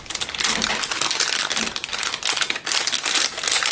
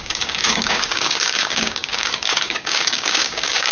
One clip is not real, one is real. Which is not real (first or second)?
second